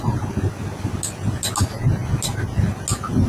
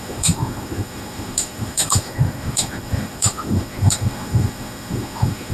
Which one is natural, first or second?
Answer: first